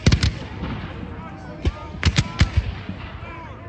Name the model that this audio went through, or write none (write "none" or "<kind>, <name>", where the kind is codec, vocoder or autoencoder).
none